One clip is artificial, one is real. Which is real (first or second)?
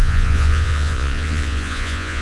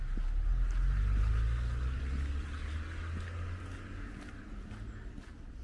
second